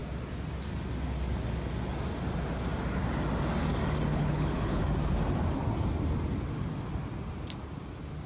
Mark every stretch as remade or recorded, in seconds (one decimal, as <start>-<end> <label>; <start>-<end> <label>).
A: 0.0-4.1 recorded; 4.1-4.8 remade; 4.8-8.3 recorded